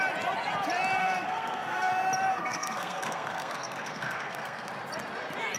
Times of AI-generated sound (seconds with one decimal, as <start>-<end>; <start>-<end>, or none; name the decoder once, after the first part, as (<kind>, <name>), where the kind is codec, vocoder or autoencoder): 1.0-1.9 (codec, SNAC); 2.3-4.7